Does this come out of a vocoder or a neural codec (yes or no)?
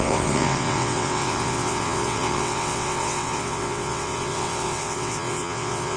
yes